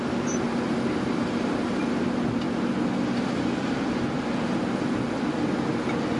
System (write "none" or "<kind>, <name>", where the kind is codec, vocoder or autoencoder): none